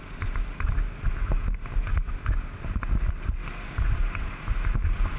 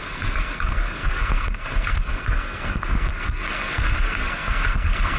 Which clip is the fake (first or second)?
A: second